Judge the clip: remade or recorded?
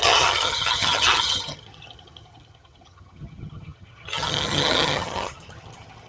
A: remade